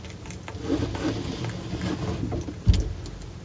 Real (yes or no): yes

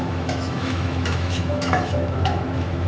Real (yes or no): no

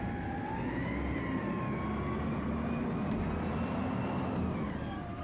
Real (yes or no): yes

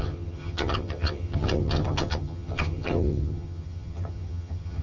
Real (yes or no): no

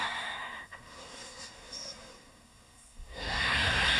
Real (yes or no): no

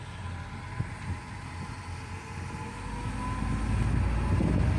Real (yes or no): yes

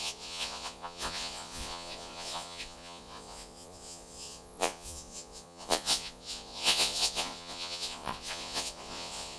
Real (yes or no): no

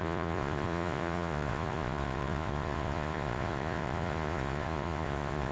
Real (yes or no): no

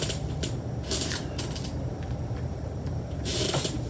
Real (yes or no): no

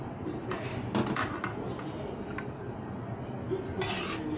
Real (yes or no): yes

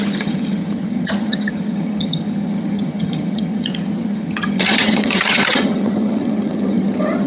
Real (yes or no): no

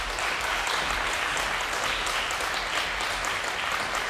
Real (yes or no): yes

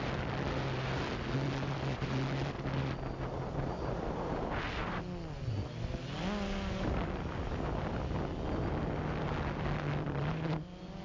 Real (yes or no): yes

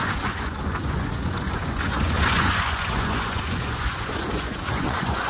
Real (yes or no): no